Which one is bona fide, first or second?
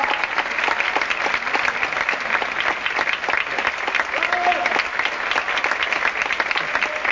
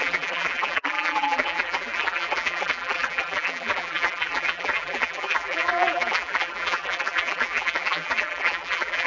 first